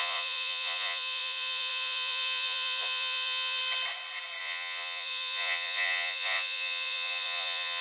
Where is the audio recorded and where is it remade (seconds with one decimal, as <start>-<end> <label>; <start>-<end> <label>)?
0.0-3.6 remade; 3.6-4.4 recorded; 4.4-7.8 remade